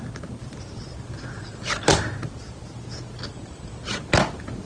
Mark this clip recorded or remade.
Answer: recorded